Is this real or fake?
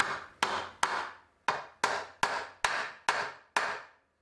real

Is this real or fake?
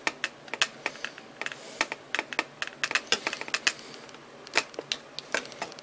real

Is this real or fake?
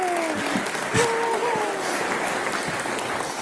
real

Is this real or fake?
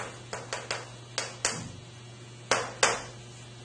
real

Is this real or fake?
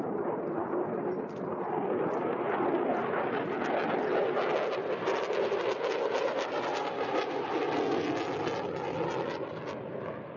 real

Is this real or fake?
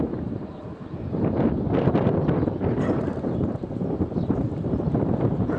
fake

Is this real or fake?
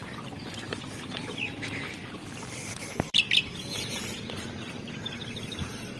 fake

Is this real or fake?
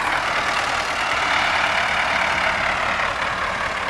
real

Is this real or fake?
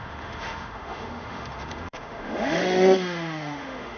fake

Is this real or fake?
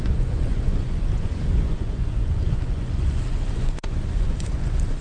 fake